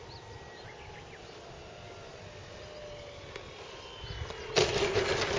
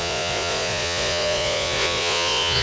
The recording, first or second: first